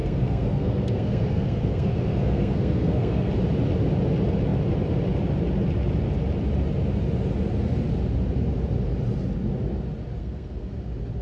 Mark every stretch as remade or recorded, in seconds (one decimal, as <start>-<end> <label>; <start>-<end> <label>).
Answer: 0.0-3.3 remade; 3.3-10.2 recorded; 10.2-10.7 remade; 10.7-11.2 recorded